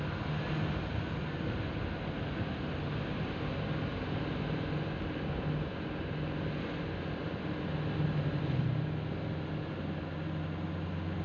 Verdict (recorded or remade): recorded